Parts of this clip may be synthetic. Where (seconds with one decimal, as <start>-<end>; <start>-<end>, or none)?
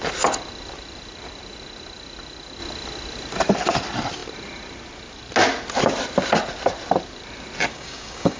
7.7-8.4